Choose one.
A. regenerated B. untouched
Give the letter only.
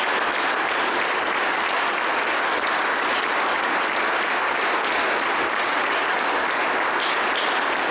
B